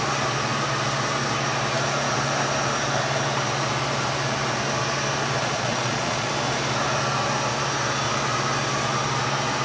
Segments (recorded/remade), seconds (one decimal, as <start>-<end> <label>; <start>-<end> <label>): 0.0-5.4 recorded; 5.4-6.3 remade; 6.3-9.6 recorded